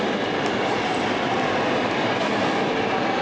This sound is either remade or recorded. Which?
recorded